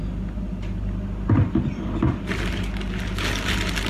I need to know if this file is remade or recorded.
recorded